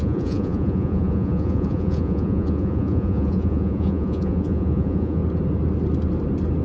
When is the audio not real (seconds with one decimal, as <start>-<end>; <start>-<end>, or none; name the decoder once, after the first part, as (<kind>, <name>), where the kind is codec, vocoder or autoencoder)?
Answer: 0.0-5.2 (vocoder, Vocos)